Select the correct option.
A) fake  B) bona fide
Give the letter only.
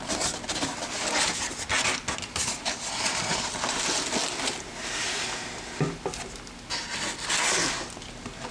B